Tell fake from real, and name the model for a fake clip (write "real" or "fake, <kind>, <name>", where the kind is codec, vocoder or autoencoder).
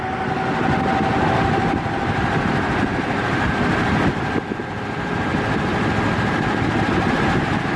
real